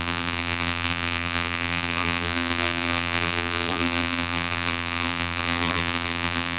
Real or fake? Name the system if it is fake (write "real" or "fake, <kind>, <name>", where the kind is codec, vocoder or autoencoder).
fake, vocoder, BigVGAN v2